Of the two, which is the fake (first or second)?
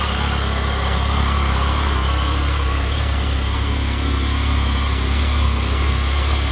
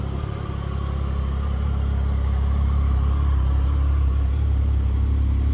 first